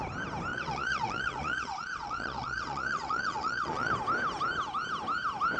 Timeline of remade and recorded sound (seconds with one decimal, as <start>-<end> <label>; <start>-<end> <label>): 0.0-0.5 recorded; 0.5-3.9 remade; 3.9-5.6 recorded